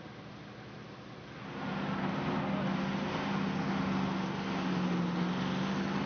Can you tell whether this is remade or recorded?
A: recorded